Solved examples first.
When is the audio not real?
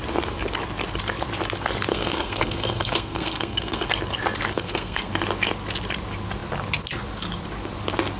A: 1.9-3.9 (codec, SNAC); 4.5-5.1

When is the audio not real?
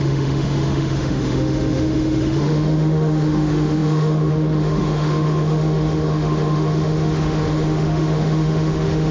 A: 0.0-9.1 (autoencoder, DAC-VAE)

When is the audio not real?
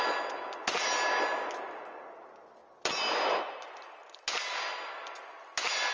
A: none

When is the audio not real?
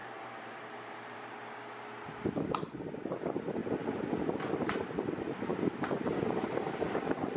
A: 0.0-1.2 (vocoder, BigVGAN v2); 5.5-7.0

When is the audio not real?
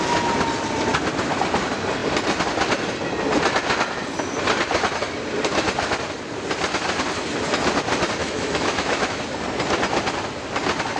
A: 8.2-9.2 (autoencoder, DAC-VAE)